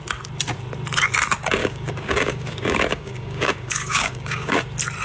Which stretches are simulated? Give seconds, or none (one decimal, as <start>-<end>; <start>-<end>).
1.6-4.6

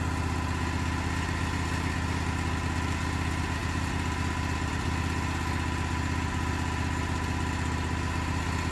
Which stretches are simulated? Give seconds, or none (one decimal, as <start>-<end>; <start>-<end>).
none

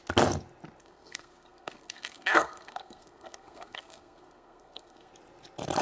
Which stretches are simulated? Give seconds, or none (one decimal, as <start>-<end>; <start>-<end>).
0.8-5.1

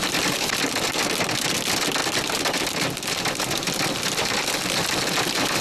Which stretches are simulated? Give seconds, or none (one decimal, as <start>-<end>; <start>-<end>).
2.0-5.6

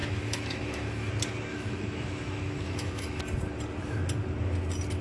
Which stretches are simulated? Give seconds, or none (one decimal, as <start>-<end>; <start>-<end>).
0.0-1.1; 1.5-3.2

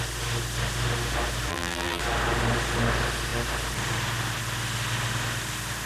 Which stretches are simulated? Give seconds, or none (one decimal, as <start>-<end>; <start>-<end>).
1.5-2.0

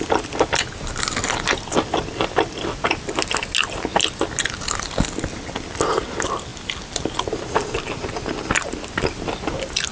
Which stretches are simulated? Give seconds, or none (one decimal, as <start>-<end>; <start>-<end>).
none

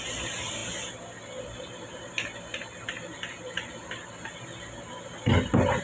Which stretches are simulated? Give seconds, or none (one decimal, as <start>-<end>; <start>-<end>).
none